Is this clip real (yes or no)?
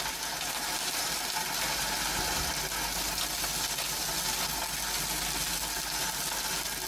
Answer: yes